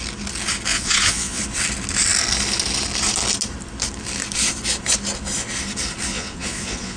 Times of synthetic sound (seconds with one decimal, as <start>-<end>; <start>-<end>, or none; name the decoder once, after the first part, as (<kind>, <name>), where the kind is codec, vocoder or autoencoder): 0.7-1.4 (vocoder, Vocos); 6.1-7.0